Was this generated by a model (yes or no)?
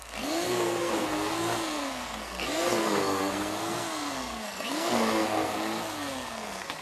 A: yes